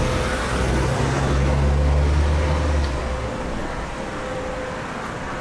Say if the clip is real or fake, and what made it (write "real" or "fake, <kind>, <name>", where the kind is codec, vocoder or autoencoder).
real